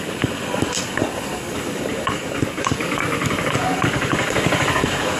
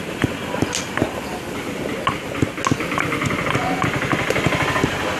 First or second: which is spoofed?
first